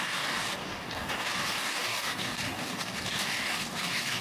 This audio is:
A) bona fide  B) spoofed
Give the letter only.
B